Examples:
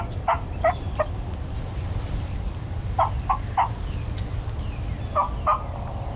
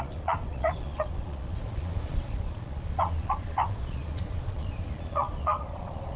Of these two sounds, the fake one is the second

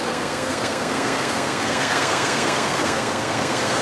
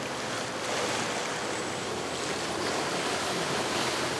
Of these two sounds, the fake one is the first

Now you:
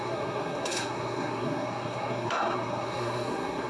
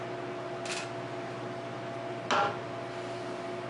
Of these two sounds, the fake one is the first